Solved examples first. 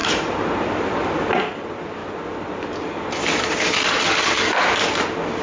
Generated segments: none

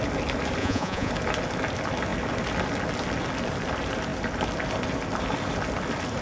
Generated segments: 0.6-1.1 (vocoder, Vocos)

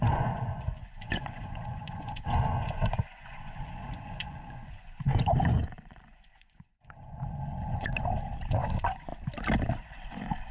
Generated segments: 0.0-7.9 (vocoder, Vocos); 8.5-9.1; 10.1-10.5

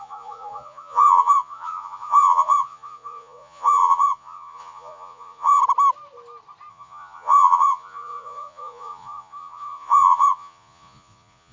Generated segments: 0.0-5.6 (vocoder, Vocos); 6.7-11.5